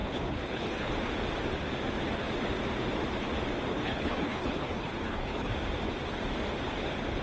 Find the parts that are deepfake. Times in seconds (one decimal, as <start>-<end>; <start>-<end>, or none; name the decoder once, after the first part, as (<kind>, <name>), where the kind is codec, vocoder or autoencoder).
0.0-0.9 (codec, HILCodec); 3.7-5.5